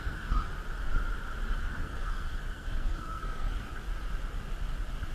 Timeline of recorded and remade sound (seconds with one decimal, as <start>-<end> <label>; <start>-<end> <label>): 0.0-0.5 remade; 0.5-1.6 recorded; 1.6-3.7 remade; 3.7-5.1 recorded